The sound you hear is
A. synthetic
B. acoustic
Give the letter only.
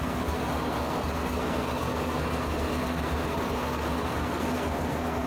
A